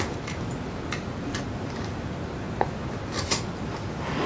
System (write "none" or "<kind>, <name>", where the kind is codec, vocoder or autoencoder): none